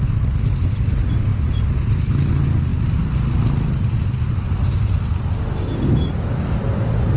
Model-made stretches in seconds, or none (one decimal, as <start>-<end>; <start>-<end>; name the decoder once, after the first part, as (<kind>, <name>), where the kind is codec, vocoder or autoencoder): none